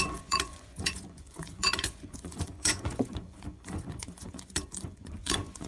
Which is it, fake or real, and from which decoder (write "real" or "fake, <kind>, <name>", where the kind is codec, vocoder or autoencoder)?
fake, vocoder, Vocos